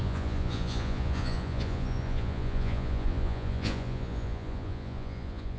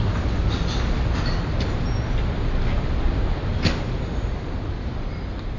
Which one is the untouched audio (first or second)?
second